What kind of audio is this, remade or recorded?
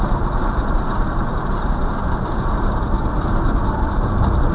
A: remade